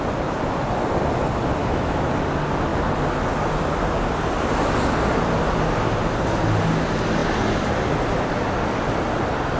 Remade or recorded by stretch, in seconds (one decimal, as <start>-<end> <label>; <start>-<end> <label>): 0.0-1.6 recorded; 1.6-2.1 remade; 2.1-9.6 recorded